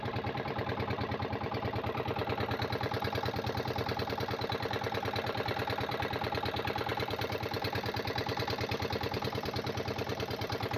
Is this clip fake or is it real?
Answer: fake